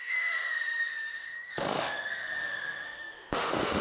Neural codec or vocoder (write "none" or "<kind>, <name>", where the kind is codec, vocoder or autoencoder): autoencoder, DAC-VAE